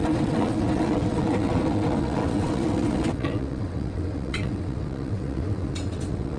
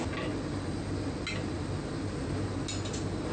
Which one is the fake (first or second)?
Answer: first